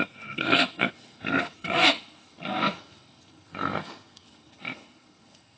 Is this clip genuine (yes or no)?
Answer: no